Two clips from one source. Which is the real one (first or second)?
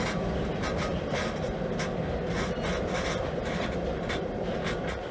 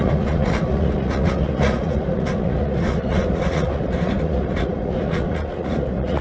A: first